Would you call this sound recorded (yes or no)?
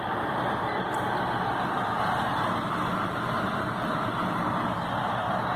yes